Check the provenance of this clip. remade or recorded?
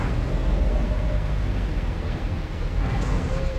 remade